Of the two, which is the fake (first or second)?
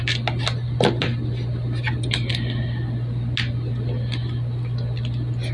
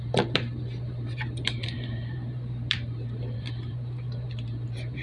second